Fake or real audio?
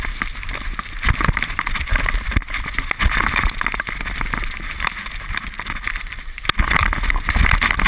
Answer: real